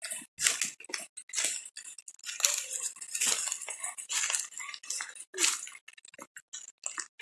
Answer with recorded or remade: recorded